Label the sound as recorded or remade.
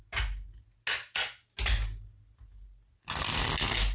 recorded